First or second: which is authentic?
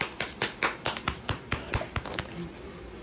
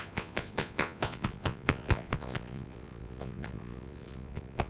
first